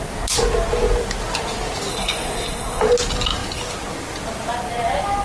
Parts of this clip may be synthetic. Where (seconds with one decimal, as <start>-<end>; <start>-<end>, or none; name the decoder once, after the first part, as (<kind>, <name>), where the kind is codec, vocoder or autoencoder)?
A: 1.9-2.8 (codec, SNAC)